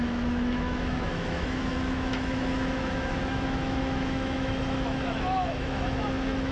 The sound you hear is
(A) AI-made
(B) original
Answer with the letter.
A